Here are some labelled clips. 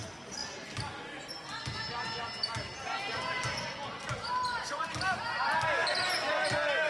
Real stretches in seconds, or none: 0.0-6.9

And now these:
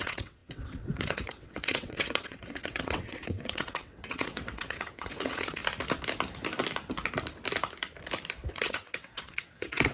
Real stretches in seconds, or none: 5.6-8.5

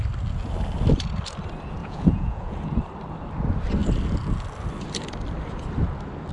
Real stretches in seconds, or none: 0.0-1.8; 2.8-6.3